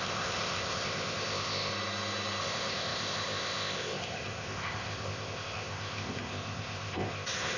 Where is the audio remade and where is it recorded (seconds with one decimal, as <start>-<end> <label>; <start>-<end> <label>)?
0.0-1.7 remade; 1.7-2.4 recorded; 2.4-7.6 remade